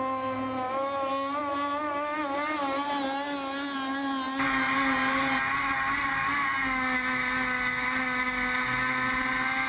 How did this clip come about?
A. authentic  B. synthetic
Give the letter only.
A